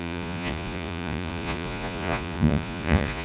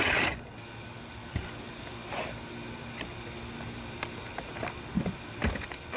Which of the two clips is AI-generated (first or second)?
first